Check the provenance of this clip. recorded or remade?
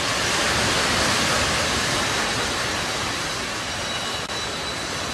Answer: recorded